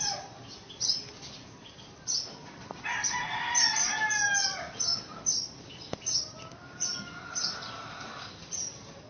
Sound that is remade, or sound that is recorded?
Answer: recorded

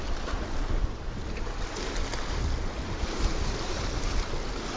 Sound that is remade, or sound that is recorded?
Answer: recorded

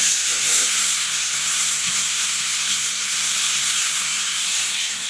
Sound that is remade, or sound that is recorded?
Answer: remade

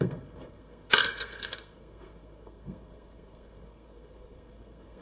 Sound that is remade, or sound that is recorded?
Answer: remade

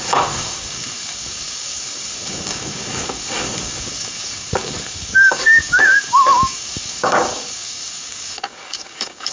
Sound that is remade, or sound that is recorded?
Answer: remade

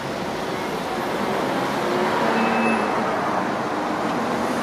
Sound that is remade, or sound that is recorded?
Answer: recorded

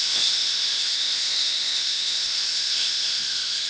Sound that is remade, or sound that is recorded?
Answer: remade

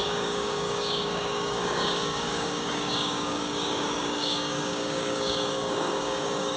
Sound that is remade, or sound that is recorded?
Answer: remade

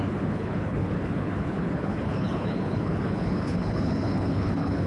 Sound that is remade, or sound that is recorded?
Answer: remade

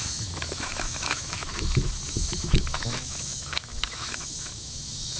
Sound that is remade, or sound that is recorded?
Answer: remade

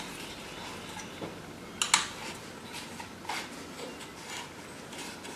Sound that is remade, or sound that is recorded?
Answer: recorded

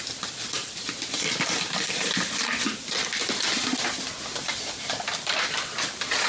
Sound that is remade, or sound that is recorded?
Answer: recorded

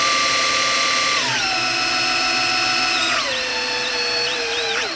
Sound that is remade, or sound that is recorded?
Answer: recorded